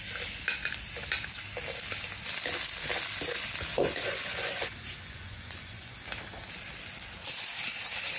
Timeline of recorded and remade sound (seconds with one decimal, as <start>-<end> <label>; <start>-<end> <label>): 0.0-3.7 recorded; 3.7-6.0 remade; 6.0-8.2 recorded